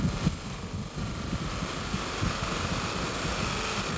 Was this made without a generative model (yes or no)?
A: yes